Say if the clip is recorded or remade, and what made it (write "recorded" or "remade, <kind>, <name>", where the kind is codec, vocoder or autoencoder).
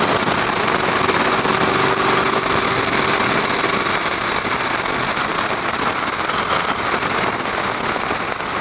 recorded